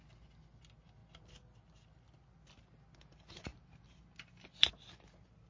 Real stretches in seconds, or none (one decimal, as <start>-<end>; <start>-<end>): 0.0-5.5